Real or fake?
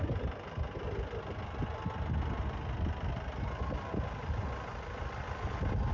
real